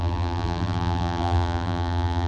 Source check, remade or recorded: remade